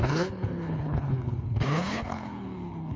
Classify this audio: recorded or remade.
remade